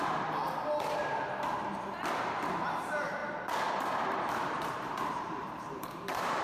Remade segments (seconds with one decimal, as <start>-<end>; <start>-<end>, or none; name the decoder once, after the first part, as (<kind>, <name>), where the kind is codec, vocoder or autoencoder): 0.0-0.4 (vocoder, BigVGAN v2); 2.7-3.2; 3.9-6.4